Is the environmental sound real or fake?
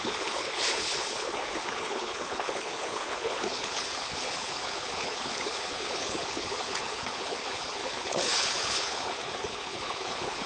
fake